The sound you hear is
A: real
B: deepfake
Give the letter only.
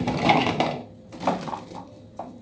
A